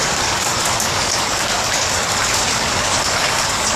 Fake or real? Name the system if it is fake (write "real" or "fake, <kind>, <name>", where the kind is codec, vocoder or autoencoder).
fake, codec, DAC